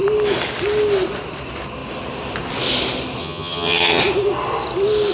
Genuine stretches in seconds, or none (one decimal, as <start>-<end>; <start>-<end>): 0.0-3.2; 4.0-5.1